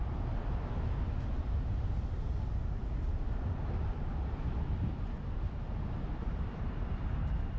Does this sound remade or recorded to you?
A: recorded